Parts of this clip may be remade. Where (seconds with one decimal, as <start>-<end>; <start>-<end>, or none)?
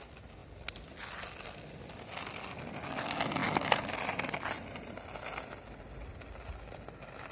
none